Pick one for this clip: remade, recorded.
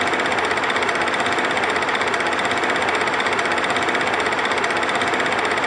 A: recorded